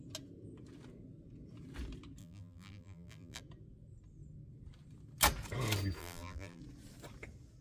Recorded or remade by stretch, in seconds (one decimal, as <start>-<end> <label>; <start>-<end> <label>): 0.0-2.2 recorded; 2.2-3.4 remade; 3.4-6.0 recorded; 6.0-6.6 remade; 6.6-7.6 recorded